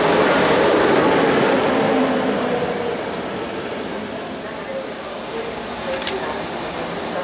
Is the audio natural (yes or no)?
no